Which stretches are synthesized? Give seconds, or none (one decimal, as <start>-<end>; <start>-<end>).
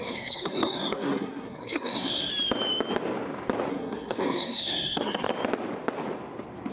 0.0-2.3; 3.7-5.3